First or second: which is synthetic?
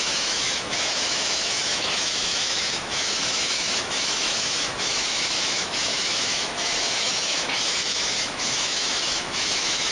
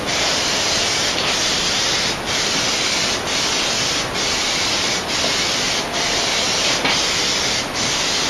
first